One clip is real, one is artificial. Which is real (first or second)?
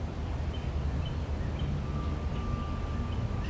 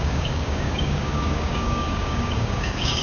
first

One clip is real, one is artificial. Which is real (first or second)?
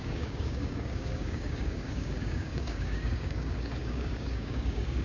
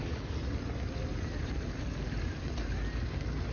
second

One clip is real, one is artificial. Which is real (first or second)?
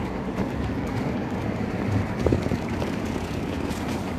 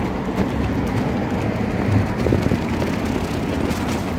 second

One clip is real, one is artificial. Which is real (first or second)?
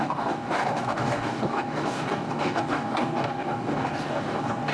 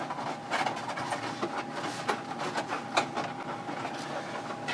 second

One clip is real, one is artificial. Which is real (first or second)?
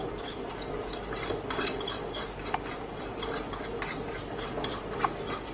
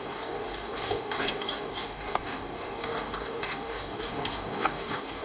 first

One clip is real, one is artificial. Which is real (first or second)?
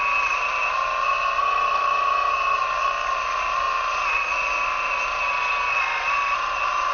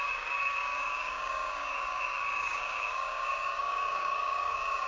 first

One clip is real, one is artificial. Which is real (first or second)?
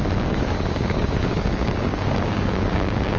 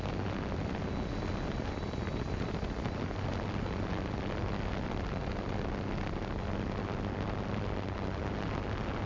second